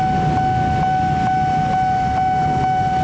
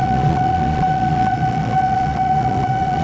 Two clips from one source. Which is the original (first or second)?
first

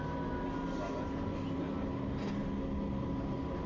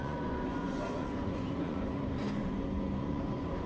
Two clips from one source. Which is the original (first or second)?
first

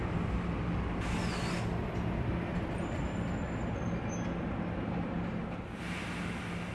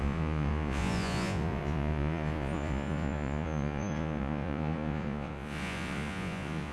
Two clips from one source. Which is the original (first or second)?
first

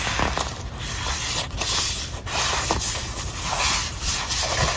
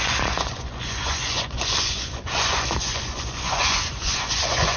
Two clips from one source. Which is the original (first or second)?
first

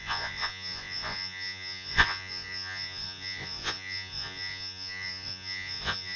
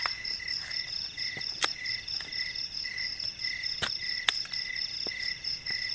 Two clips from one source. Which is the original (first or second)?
second